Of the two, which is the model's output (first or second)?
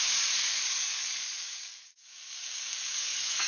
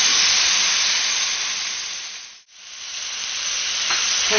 first